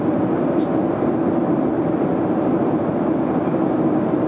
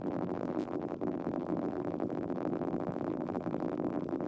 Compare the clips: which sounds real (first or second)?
first